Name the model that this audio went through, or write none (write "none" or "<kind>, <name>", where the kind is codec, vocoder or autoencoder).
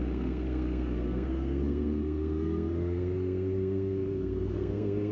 codec, SNAC